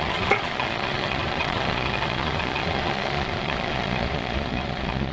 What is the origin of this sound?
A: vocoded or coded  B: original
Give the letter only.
A